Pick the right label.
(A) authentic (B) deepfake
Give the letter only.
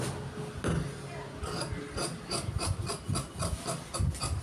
A